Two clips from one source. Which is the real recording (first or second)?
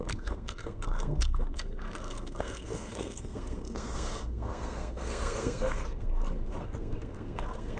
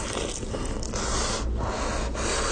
second